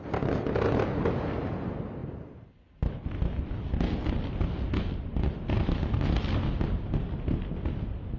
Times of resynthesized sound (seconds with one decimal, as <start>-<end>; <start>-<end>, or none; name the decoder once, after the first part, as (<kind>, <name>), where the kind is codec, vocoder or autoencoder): 2.0-3.7 (vocoder, BigVGAN v2)